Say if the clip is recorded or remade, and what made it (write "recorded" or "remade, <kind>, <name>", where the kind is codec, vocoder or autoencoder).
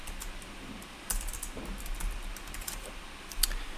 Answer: recorded